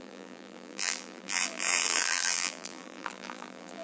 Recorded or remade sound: remade